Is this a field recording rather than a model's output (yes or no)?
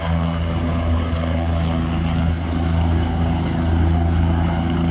no